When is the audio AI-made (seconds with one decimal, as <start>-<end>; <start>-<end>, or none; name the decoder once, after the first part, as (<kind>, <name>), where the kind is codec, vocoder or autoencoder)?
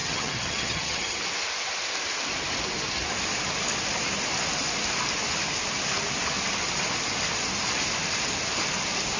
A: 0.0-1.2 (vocoder, HiFi-GAN)